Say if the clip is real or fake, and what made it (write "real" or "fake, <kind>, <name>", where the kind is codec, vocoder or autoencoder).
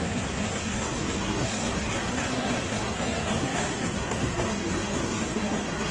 fake, codec, SNAC